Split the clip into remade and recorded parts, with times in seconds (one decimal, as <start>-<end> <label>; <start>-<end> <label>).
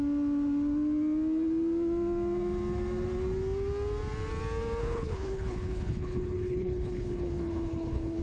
0.0-4.8 recorded; 4.8-8.2 remade